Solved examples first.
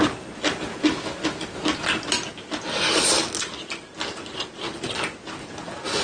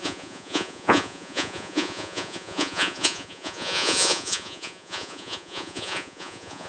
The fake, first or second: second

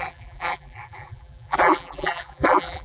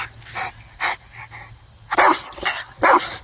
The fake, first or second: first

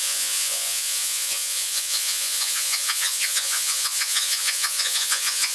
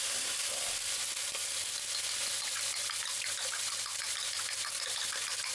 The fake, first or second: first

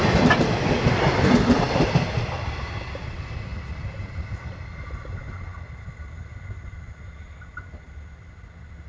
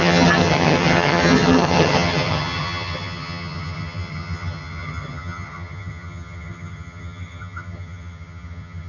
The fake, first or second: second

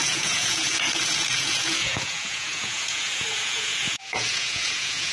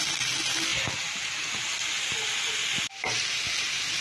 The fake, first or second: first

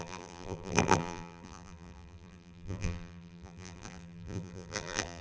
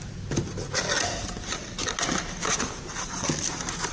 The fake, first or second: first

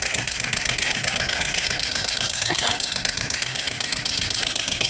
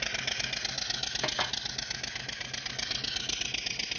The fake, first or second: first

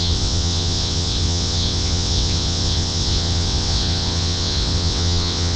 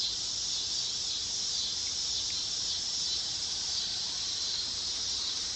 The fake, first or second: first